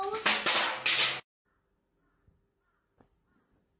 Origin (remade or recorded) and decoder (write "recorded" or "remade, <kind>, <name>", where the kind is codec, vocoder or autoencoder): recorded